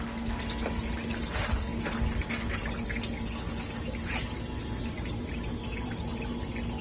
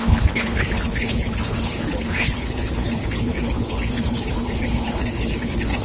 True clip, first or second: first